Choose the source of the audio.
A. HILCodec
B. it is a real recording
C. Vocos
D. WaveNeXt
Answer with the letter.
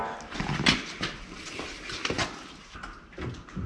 B